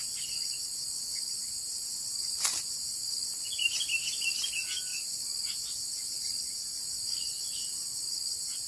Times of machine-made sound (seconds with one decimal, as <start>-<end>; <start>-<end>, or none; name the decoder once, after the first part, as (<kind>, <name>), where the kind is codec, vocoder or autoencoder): none